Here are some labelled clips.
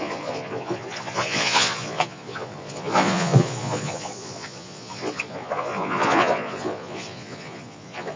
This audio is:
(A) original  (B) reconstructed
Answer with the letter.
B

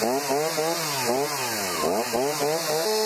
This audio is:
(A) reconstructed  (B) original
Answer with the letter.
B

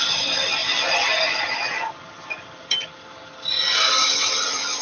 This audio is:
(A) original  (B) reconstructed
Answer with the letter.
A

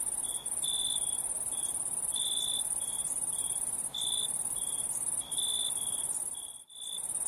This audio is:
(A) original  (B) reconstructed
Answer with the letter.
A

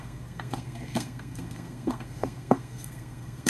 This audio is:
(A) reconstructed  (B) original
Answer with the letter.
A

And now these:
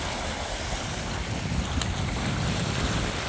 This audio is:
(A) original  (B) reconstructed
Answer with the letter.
A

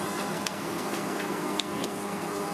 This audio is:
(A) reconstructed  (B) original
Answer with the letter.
A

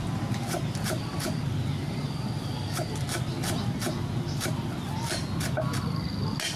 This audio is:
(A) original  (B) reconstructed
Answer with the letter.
A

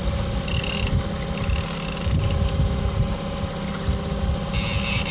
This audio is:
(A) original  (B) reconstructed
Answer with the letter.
A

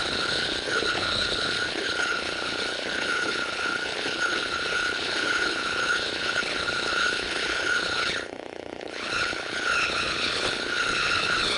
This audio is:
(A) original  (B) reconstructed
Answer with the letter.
B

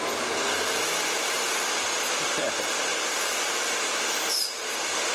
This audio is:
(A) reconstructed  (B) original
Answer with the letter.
B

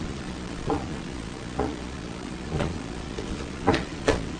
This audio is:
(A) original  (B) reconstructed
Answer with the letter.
B